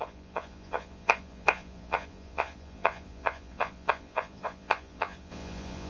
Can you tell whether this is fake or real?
fake